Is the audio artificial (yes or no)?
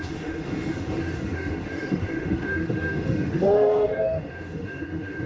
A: yes